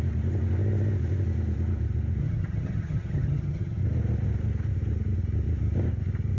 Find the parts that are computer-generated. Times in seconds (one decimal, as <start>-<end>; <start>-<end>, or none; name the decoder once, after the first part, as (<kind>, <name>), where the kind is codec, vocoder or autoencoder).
2.2-3.8 (vocoder, HiFi-GAN)